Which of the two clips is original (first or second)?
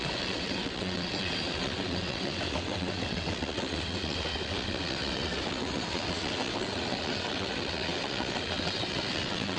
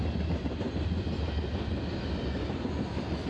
second